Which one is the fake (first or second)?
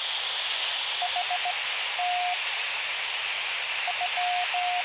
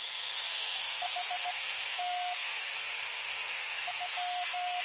second